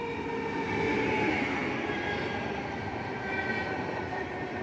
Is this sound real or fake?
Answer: real